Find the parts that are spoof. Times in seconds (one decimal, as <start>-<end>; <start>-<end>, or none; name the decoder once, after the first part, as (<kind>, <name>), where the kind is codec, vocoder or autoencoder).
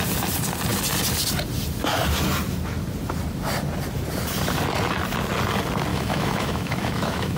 5.9-7.4 (autoencoder, DAC-VAE)